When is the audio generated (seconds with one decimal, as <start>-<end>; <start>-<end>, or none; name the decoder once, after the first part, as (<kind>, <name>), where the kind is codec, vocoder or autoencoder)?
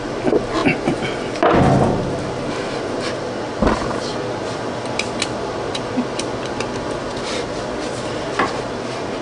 none